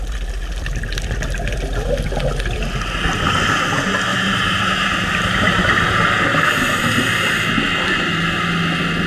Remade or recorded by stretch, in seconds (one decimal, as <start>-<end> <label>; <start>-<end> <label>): 0.0-4.1 recorded; 4.1-6.8 remade; 6.8-9.1 recorded